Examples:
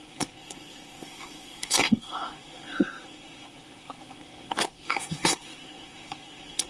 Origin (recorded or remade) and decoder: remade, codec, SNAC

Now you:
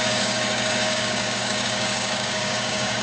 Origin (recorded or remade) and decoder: remade, codec, DAC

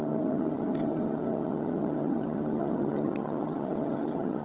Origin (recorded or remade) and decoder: remade, vocoder, HiFi-GAN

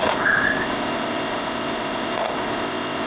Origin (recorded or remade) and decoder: remade, codec, ZipCodec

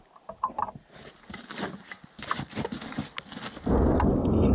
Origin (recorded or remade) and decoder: recorded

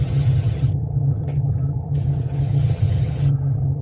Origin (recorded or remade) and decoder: remade, vocoder, HiFi-GAN